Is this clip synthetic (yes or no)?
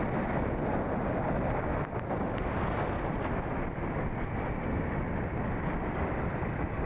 no